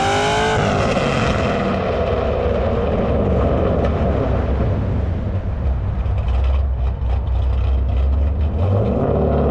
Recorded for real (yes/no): yes